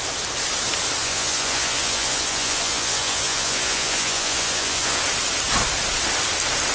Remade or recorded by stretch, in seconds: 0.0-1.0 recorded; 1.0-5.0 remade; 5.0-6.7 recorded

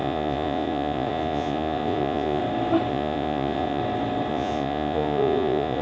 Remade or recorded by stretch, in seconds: 0.0-2.4 remade; 2.4-2.9 recorded; 2.9-3.8 remade; 3.8-4.3 recorded; 4.3-5.8 remade

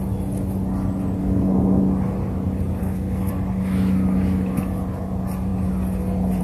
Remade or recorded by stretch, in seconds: 0.0-1.2 recorded; 1.2-1.8 remade; 1.8-2.8 recorded; 2.8-3.3 remade; 3.3-6.4 recorded

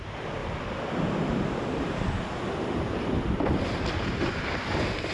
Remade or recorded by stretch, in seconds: 0.0-5.1 recorded

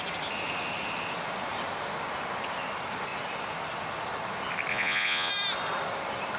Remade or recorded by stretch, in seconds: 0.0-4.7 recorded; 4.7-5.3 remade; 5.3-6.4 recorded

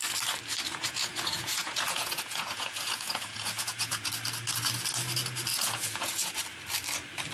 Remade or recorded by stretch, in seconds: 0.0-0.7 recorded; 0.7-4.1 remade; 4.1-5.5 recorded; 5.5-6.3 remade; 6.3-7.3 recorded